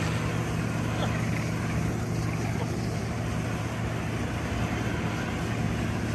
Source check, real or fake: real